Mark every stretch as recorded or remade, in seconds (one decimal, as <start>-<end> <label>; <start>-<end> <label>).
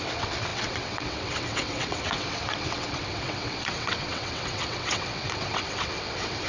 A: 0.0-6.5 remade